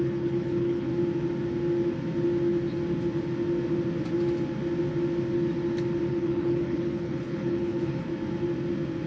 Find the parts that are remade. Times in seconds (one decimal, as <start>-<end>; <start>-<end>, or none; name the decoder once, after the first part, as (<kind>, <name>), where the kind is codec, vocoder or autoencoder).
0.0-0.9 (codec, HILCodec); 6.1-8.1